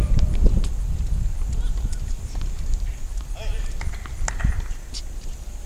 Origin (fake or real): fake